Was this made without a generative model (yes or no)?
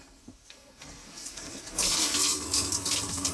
no